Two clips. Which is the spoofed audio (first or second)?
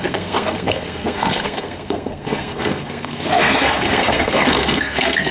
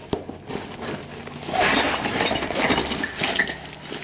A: first